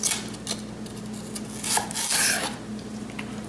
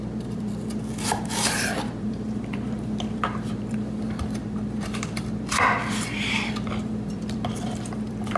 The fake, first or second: second